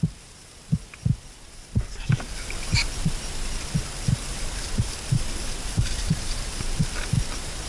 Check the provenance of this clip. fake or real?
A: real